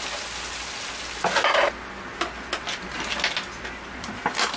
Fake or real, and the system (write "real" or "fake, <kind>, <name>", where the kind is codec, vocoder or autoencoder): real